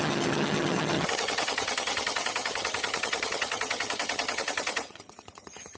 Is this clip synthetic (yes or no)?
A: yes